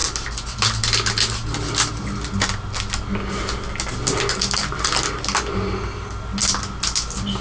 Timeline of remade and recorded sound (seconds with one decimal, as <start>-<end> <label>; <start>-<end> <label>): 0.0-7.4 recorded